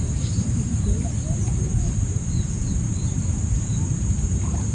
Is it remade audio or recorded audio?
remade